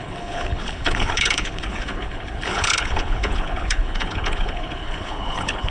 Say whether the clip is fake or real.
fake